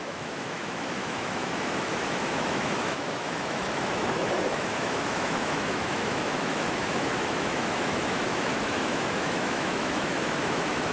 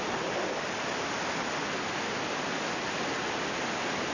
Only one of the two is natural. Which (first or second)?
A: second